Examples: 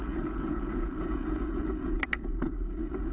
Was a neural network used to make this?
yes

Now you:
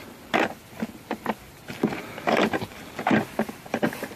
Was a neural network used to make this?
no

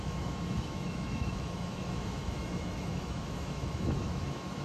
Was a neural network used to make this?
yes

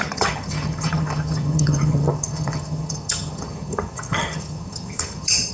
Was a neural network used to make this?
yes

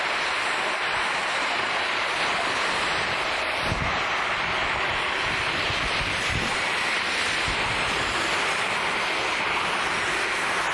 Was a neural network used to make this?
no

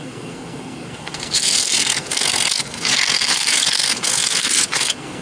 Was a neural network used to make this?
yes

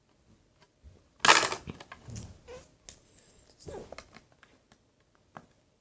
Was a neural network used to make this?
no